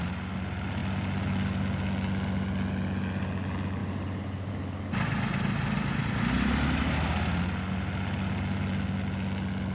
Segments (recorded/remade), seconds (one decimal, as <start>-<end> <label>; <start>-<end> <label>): 0.0-3.8 recorded; 3.8-4.5 remade; 4.5-9.7 recorded